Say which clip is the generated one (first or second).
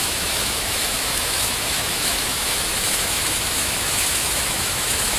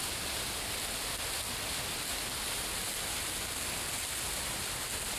first